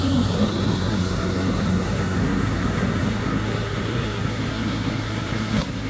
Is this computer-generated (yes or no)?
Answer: yes